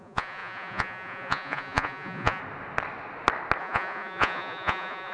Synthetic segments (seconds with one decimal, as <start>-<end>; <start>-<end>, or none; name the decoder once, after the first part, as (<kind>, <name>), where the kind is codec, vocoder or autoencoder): 0.0-2.4 (vocoder, Vocos); 3.6-5.1